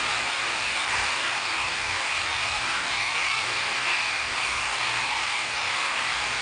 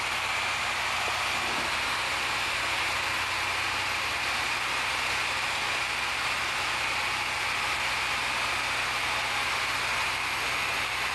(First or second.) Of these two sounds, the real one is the second